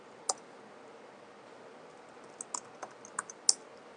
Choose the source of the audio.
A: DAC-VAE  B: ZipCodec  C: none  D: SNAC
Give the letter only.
C